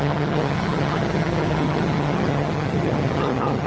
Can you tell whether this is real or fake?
fake